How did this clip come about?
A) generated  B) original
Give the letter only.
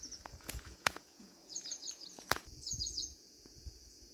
A